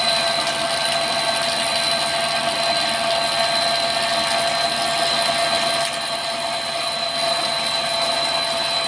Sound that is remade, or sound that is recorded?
recorded